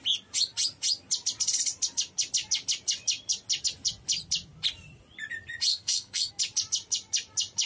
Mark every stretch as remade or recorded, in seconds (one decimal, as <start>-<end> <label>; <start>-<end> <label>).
0.0-5.7 recorded; 5.7-6.3 remade; 6.3-7.7 recorded